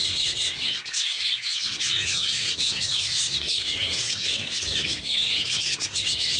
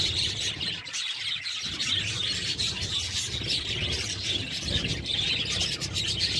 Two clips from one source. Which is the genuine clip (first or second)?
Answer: second